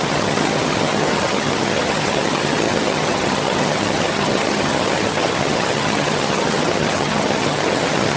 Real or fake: fake